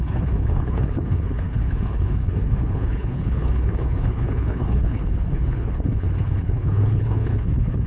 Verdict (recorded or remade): remade